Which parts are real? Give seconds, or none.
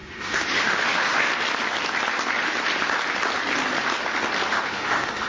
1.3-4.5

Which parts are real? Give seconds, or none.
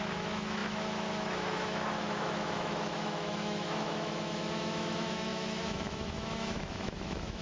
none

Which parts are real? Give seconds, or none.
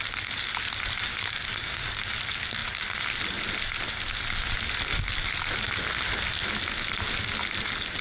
0.0-1.1; 2.2-8.0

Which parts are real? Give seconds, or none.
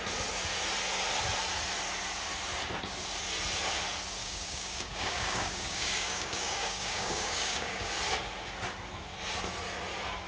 0.0-4.2; 7.9-10.3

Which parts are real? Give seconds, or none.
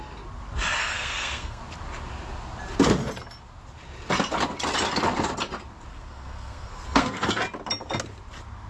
0.0-0.8; 1.6-5.9; 7.3-8.7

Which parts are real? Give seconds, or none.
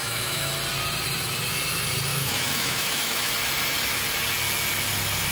0.5-2.1; 3.3-5.3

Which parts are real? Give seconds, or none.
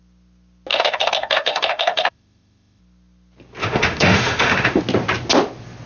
0.0-0.7; 2.8-3.6; 4.8-5.9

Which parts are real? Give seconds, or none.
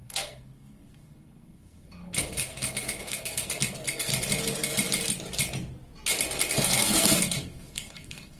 4.1-6.6